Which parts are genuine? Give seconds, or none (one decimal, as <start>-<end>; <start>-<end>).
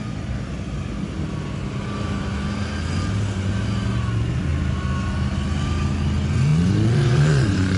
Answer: 0.0-6.5